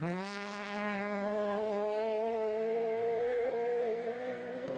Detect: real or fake fake